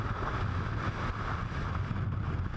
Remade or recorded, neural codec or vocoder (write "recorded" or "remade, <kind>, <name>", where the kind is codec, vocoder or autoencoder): recorded